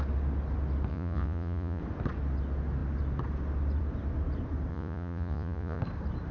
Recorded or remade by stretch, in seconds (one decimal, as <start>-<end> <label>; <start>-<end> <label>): 0.0-0.9 recorded; 0.9-1.8 remade; 1.8-4.7 recorded; 4.7-5.8 remade; 5.8-6.3 recorded